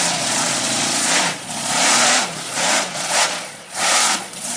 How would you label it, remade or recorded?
remade